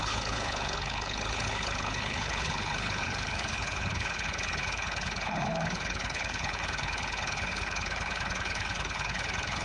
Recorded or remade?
remade